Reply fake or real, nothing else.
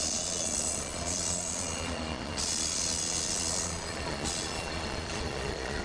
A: fake